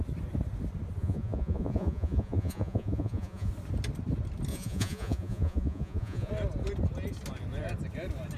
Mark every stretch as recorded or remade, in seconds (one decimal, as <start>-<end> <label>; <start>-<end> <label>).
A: 0.0-1.0 recorded; 1.0-3.5 remade; 3.5-4.5 recorded; 4.5-6.3 remade; 6.3-8.4 recorded